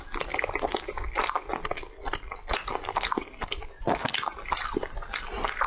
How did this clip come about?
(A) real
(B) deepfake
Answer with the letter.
A